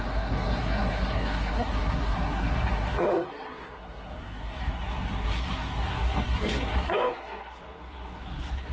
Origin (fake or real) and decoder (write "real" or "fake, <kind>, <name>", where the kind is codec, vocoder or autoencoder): fake, codec, SNAC